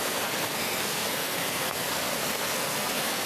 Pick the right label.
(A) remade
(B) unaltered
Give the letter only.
A